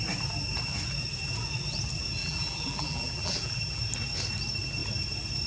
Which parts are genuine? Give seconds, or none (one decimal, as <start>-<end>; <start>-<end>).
0.0-2.2; 3.8-5.5